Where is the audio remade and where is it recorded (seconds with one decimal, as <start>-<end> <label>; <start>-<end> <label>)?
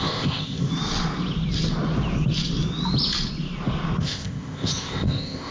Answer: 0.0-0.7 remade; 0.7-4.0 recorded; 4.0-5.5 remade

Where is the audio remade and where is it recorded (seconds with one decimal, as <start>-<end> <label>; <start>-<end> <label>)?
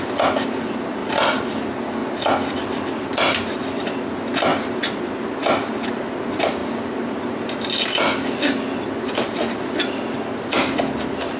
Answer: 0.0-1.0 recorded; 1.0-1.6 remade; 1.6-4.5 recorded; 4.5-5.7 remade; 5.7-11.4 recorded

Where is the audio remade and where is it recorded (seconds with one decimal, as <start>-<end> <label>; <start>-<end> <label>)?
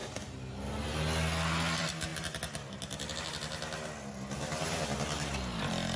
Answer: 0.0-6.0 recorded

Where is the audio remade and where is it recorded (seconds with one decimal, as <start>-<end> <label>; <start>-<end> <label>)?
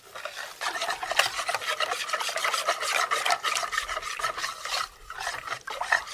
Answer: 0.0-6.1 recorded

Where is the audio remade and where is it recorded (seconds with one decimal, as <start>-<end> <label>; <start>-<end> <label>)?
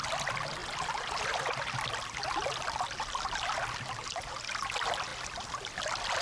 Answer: 0.0-6.2 recorded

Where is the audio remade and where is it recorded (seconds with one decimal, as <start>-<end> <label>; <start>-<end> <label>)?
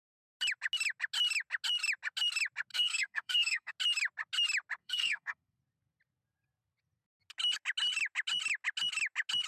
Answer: 0.0-2.7 recorded; 2.7-3.7 remade; 3.7-4.8 recorded; 4.8-5.6 remade; 5.6-9.5 recorded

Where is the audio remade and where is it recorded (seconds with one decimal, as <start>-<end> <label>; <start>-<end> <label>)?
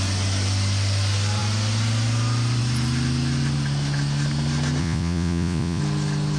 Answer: 0.0-4.8 recorded; 4.8-5.8 remade; 5.8-6.4 recorded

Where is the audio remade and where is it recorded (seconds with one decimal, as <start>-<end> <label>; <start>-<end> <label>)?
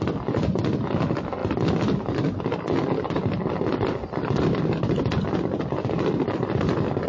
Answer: 0.0-7.1 recorded